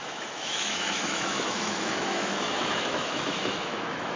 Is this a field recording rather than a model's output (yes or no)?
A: no